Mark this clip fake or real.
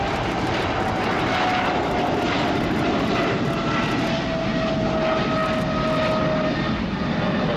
real